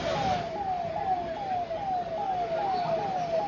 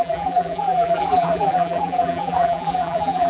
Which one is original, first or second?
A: first